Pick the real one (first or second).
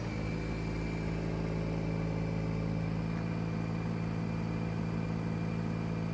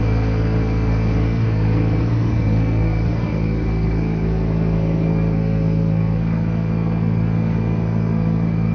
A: first